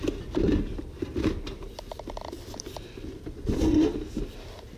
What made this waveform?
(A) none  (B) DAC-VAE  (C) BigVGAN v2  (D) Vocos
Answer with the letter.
C